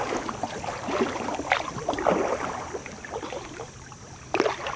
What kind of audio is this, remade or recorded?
recorded